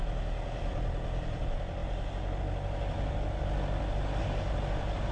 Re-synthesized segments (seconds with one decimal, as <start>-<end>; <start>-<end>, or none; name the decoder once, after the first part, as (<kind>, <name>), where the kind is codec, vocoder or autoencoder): none

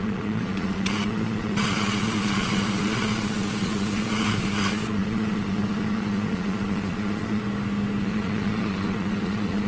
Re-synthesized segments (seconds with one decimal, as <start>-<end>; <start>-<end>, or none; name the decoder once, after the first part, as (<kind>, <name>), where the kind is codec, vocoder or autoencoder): 0.0-7.4 (vocoder, Vocos); 8.0-9.7